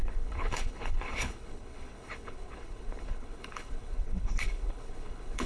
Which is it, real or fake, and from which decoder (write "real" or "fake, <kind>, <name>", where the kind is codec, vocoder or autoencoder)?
fake, codec, HILCodec